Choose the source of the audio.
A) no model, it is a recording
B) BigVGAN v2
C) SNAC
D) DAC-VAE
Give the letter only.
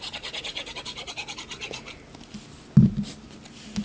A